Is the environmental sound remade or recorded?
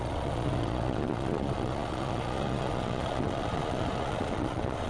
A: remade